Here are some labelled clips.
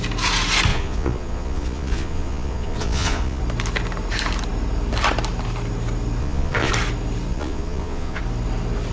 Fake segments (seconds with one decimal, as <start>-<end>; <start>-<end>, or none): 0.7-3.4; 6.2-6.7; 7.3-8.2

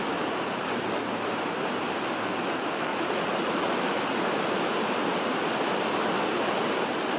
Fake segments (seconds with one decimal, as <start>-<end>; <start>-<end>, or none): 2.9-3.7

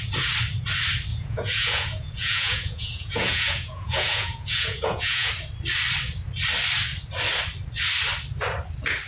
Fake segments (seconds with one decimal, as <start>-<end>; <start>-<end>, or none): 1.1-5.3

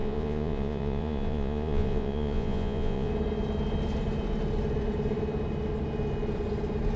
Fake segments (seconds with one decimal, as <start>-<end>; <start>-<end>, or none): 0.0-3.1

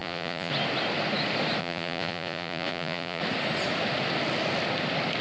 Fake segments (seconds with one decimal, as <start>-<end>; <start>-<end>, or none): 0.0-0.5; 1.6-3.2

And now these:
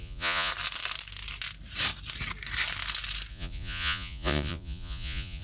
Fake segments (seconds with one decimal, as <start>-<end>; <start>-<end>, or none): 0.0-0.5; 3.3-5.4